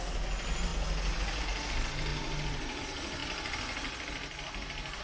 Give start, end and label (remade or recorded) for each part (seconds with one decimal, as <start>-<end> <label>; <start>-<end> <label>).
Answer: 0.0-5.0 recorded